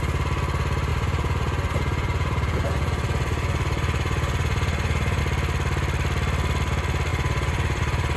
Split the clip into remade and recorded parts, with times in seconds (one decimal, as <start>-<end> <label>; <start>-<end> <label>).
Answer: 0.0-0.9 recorded; 0.9-5.2 remade; 5.2-7.1 recorded; 7.1-8.2 remade